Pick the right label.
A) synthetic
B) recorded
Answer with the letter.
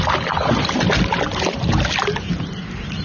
B